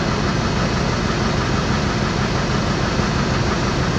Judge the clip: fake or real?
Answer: real